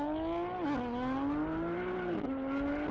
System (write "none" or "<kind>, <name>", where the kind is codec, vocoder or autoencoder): none